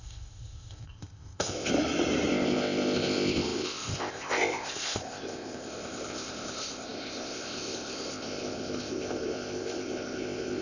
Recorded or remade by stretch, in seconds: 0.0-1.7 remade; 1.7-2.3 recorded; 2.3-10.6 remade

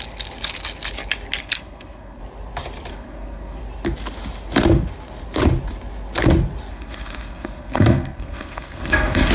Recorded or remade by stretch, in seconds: 0.0-1.4 recorded; 1.4-2.2 remade; 2.2-2.9 recorded; 2.9-3.6 remade; 3.6-6.7 recorded; 6.7-9.3 remade